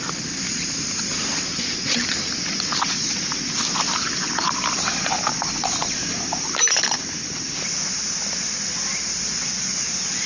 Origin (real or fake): real